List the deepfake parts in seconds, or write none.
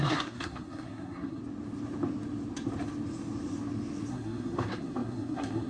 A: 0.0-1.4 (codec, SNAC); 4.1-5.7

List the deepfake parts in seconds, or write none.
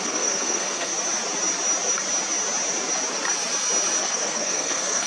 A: 0.0-0.9 (codec, SNAC); 4.0-5.1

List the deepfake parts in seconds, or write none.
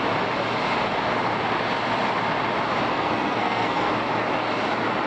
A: 2.9-3.9 (codec, SNAC)